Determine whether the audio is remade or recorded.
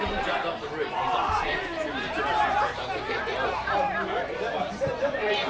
remade